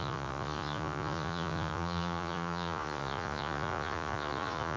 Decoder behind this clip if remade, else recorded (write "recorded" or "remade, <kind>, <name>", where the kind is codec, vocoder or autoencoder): remade, vocoder, Vocos